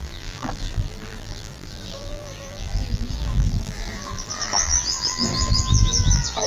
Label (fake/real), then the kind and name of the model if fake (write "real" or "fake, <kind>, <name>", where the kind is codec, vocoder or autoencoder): fake, vocoder, BigVGAN v2